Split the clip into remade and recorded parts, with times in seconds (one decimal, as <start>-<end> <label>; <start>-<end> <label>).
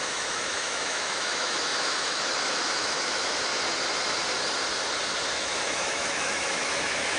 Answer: 0.0-3.5 remade; 3.5-5.3 recorded; 5.3-7.2 remade